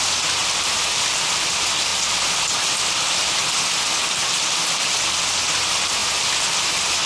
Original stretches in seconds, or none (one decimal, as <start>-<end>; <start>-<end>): 0.0-7.1